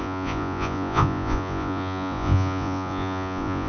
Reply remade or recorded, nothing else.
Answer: remade